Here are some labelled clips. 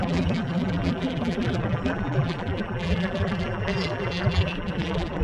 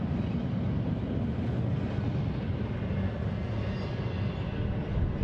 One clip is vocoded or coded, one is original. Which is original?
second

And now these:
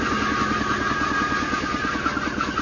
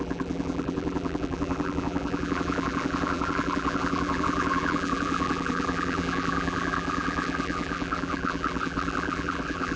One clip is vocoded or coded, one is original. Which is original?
first